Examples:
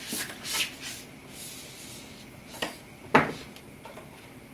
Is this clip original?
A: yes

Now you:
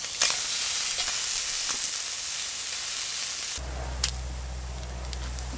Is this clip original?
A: yes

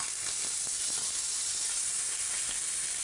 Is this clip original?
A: yes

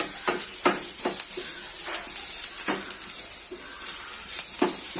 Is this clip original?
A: yes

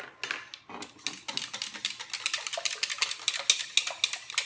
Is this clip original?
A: yes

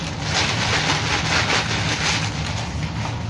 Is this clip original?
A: yes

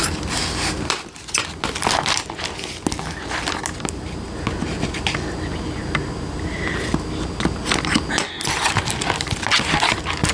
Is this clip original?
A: yes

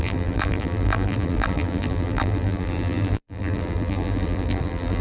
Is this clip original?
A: no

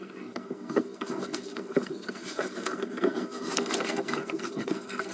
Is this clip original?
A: no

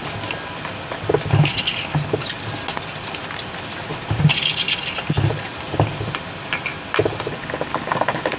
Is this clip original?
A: yes